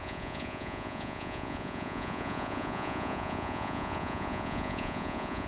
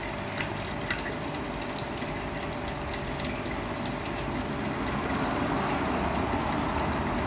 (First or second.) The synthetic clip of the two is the first